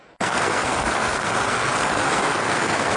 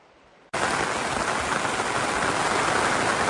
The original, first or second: second